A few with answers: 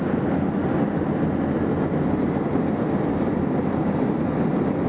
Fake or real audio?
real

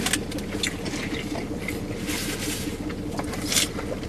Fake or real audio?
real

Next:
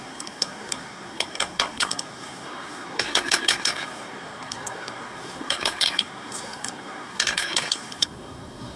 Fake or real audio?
fake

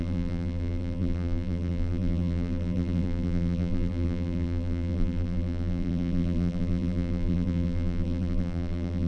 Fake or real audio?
fake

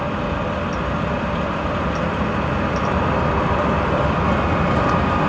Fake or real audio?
real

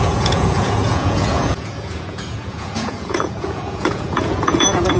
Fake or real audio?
fake